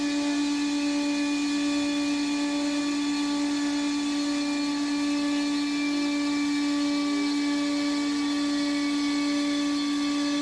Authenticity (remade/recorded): recorded